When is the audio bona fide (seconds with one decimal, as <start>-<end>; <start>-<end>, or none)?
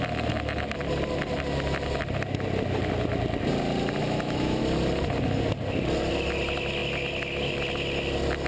0.0-4.0; 4.6-8.5